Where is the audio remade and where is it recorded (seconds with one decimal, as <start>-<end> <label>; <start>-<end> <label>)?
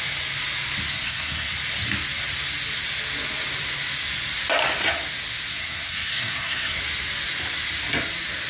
0.0-0.9 recorded; 0.9-1.5 remade; 1.5-5.5 recorded; 5.5-6.8 remade; 6.8-8.5 recorded